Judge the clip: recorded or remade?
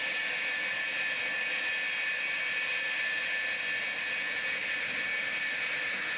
recorded